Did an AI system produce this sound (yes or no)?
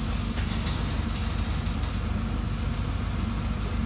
no